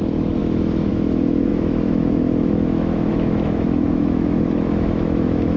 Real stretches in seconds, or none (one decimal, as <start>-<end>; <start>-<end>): none